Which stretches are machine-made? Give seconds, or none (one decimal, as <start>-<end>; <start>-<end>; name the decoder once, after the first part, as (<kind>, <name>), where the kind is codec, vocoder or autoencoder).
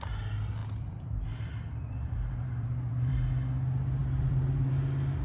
0.6-3.1 (vocoder, BigVGAN v2); 4.0-4.7